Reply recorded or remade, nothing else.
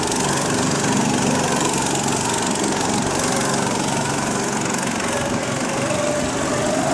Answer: recorded